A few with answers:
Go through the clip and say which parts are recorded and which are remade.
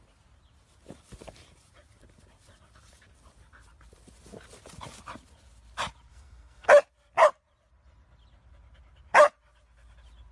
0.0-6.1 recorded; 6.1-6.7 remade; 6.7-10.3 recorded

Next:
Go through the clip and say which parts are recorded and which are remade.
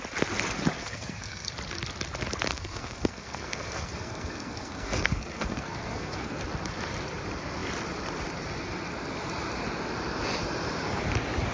0.0-0.8 recorded; 0.8-1.5 remade; 1.5-2.5 recorded; 2.5-6.4 remade; 6.4-11.5 recorded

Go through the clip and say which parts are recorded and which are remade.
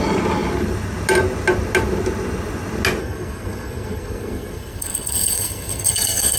0.0-3.0 recorded; 3.0-6.4 remade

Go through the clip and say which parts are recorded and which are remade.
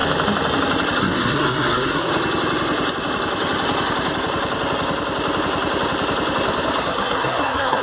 0.0-1.0 recorded; 1.0-2.1 remade; 2.1-6.8 recorded; 6.8-7.8 remade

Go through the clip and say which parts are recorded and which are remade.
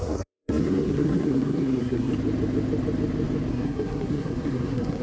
0.0-2.1 remade; 2.1-3.5 recorded; 3.5-5.0 remade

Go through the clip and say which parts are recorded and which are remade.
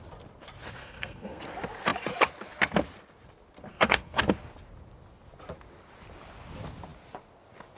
0.0-0.8 recorded; 0.8-1.4 remade; 1.4-3.7 recorded; 3.7-4.2 remade; 4.2-7.8 recorded